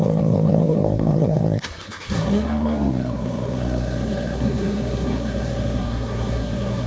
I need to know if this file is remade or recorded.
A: remade